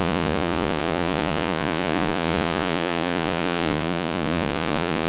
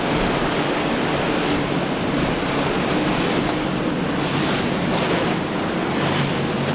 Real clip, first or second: second